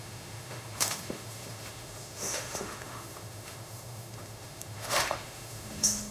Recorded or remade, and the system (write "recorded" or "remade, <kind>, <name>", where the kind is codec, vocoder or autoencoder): remade, autoencoder, DAC-VAE